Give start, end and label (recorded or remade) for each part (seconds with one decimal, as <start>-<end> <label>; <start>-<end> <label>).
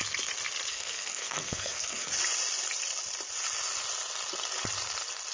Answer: 0.0-0.7 recorded; 0.7-2.1 remade; 2.1-5.3 recorded